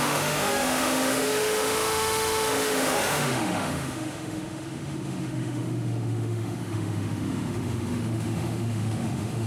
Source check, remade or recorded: remade